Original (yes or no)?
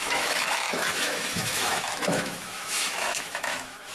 no